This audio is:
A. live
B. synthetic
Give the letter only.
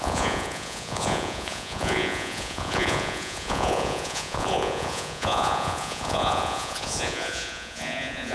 B